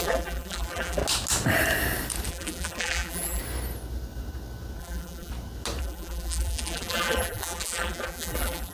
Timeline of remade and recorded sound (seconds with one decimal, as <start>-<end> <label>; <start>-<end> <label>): 0.0-1.0 remade; 1.0-2.3 recorded; 2.3-3.4 remade; 3.4-4.8 recorded; 4.8-5.3 remade; 5.3-5.8 recorded; 5.8-8.7 remade